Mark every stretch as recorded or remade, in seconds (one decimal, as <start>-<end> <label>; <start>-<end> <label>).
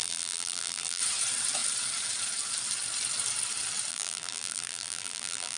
0.0-1.0 remade; 1.0-3.9 recorded; 3.9-5.6 remade